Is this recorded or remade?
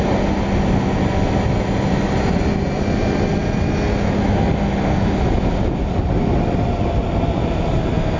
recorded